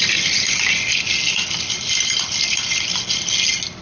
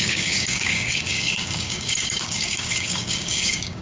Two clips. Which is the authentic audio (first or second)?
first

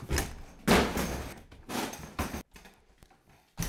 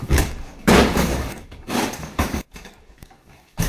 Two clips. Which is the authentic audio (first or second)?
first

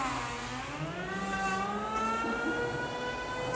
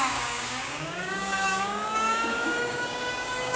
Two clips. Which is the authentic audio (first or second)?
first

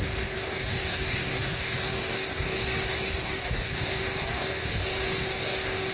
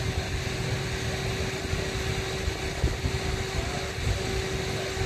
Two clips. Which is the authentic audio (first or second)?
second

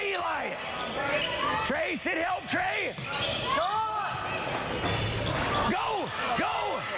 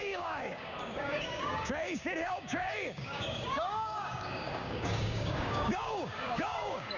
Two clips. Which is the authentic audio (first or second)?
first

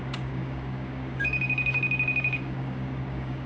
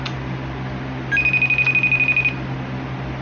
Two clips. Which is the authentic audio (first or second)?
second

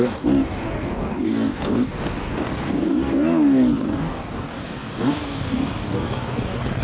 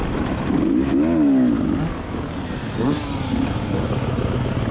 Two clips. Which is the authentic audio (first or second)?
second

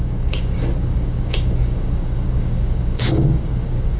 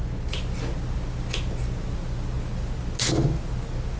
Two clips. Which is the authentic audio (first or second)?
second